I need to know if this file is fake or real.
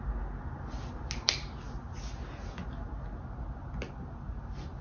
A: real